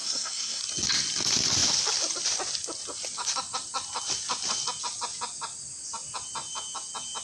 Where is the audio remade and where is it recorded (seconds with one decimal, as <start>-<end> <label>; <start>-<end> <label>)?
0.0-0.6 remade; 0.6-7.2 recorded